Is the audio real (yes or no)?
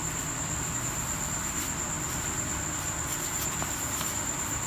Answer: yes